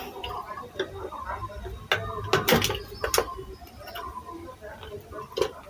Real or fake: real